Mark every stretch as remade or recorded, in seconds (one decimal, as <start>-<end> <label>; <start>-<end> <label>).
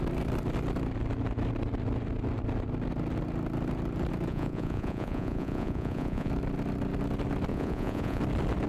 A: 0.0-4.3 recorded; 4.3-6.3 remade; 6.3-7.5 recorded; 7.5-8.2 remade; 8.2-8.7 recorded